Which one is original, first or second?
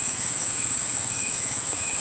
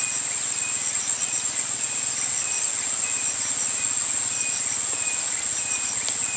second